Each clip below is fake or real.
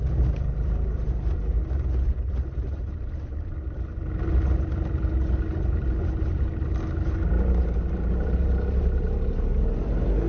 real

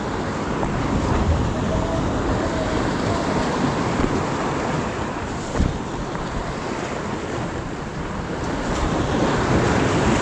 real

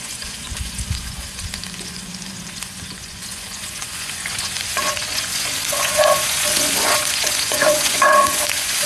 fake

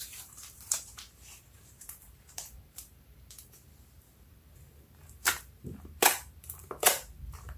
fake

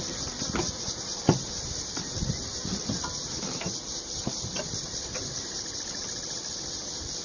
fake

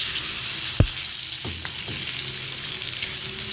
real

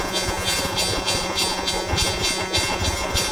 fake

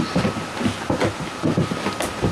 real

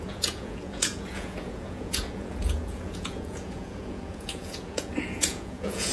fake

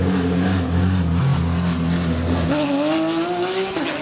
real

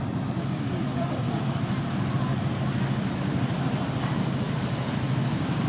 real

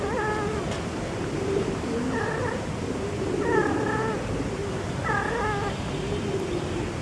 real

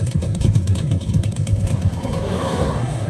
fake